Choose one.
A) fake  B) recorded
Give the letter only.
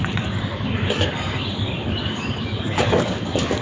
A